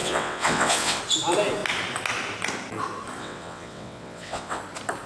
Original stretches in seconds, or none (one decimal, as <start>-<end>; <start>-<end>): 1.0-3.2; 4.6-5.1